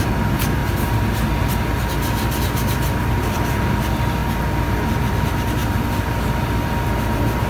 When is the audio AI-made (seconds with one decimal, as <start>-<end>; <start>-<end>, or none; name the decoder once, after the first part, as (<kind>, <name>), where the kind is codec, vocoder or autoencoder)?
0.0-0.6 (vocoder, BigVGAN v2); 2.4-4.2; 5.1-5.6; 6.3-7.5